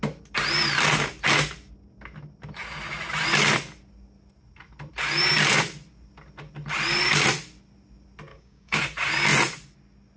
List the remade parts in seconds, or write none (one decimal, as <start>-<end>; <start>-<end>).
8.3-8.8